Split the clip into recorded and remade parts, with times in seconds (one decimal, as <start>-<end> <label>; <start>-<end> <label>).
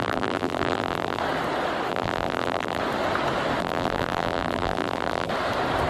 0.0-1.2 remade; 1.2-1.9 recorded; 1.9-2.8 remade; 2.8-3.6 recorded; 3.6-5.3 remade; 5.3-5.9 recorded